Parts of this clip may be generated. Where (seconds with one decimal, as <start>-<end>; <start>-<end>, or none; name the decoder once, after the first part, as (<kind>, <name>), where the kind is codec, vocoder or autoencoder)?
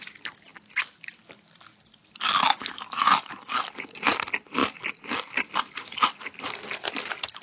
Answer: none